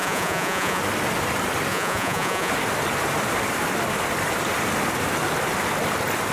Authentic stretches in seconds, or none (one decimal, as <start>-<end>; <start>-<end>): 0.8-1.7; 2.5-6.3